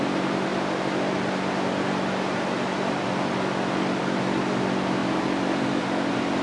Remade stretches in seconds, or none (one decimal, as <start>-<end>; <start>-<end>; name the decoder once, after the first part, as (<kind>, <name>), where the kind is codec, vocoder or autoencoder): none